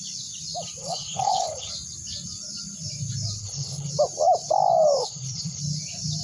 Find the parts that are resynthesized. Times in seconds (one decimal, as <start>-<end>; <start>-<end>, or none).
0.8-1.7; 3.4-3.9; 5.0-5.6